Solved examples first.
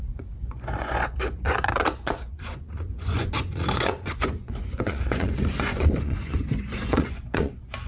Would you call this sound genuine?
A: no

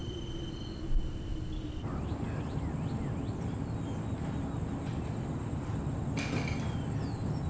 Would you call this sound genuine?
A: yes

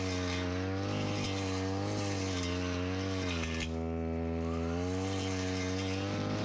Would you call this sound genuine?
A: yes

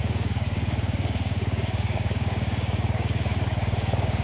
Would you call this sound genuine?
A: no